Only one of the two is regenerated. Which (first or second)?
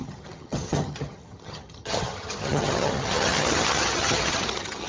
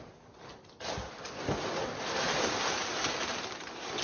first